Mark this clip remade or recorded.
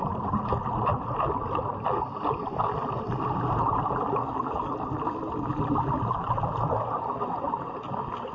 recorded